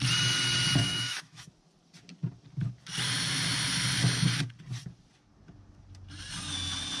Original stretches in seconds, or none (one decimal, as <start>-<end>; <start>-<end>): 0.0-0.8; 1.5-7.0